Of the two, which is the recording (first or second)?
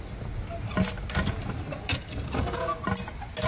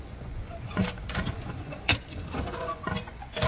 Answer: first